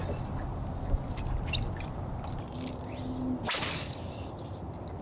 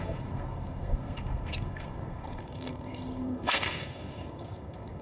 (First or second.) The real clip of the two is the first